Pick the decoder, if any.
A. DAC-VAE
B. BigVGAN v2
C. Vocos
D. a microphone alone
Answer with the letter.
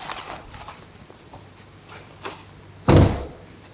D